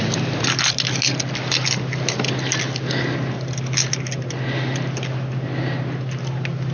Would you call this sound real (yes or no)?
yes